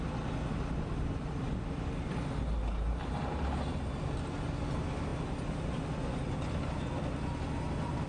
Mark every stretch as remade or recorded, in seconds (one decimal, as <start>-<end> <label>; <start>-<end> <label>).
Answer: 0.0-8.1 recorded